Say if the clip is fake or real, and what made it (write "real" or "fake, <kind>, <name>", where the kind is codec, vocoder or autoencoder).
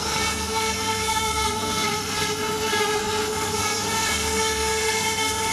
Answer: fake, codec, SNAC